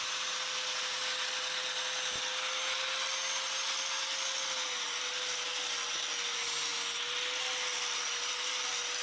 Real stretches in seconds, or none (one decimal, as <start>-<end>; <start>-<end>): 0.0-9.0